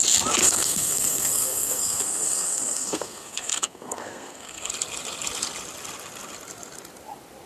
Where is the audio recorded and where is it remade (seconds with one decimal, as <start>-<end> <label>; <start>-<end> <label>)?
0.0-0.4 recorded; 0.4-4.7 remade; 4.7-7.5 recorded